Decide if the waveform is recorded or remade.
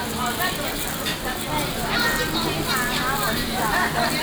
recorded